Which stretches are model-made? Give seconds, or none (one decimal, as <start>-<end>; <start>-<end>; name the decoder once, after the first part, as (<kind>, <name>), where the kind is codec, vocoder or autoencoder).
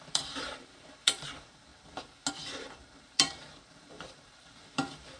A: 0.0-1.7 (vocoder, BigVGAN v2); 2.3-5.2